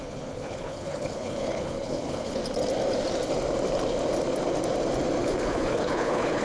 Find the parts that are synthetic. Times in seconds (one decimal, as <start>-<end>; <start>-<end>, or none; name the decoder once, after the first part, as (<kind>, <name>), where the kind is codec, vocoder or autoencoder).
0.0-2.4 (codec, HILCodec); 5.2-6.4